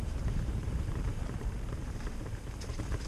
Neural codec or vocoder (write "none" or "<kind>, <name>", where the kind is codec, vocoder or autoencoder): vocoder, BigVGAN v2